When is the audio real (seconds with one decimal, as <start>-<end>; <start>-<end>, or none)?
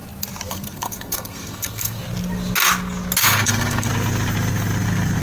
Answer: 0.0-0.5; 2.0-3.2; 3.9-5.2